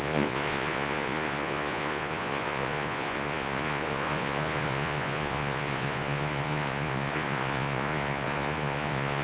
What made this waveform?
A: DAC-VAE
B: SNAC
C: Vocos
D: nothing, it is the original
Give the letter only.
C